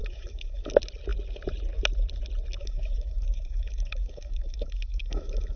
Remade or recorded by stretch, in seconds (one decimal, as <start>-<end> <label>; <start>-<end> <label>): 0.0-0.7 remade; 0.7-2.6 recorded; 2.6-5.6 remade